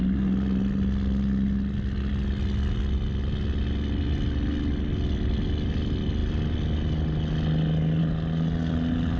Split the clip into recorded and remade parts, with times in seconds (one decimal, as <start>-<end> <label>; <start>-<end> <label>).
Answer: 0.0-9.2 recorded